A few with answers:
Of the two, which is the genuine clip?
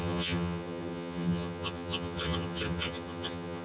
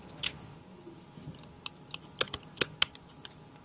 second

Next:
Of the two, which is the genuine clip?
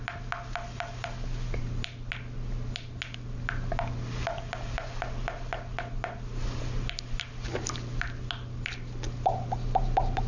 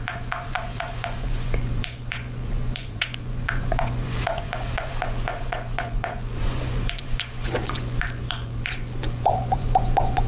first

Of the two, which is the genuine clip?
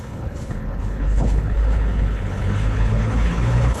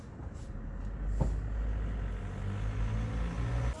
second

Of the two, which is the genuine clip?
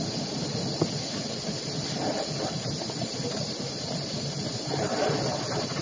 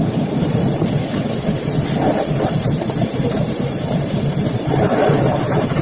first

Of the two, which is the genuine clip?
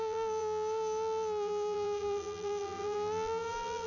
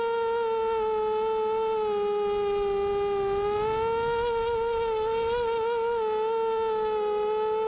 second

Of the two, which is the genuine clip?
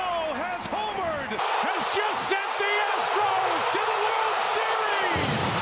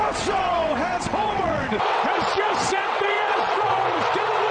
first